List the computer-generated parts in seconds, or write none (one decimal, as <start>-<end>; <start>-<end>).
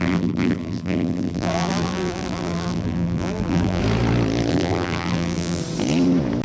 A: 0.0-3.8; 4.5-5.6